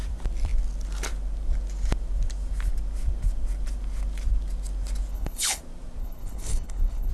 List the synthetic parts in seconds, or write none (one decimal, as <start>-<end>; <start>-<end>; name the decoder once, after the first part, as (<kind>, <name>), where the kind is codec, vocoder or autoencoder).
5.1-5.6 (codec, HILCodec); 6.0-7.1